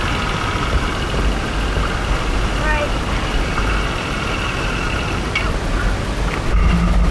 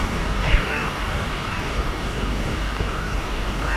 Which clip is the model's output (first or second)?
second